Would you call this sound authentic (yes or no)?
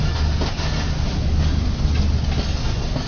yes